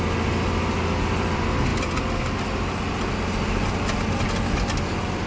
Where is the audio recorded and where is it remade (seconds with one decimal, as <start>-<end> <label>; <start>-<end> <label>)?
0.0-5.3 recorded